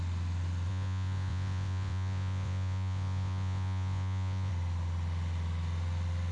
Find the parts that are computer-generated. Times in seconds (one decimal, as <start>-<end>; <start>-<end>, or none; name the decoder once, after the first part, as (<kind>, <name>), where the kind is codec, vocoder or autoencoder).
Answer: 0.7-4.5 (vocoder, Vocos)